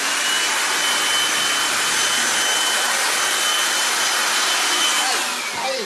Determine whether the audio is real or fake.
real